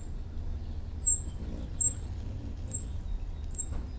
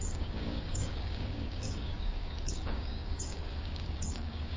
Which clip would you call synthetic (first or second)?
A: second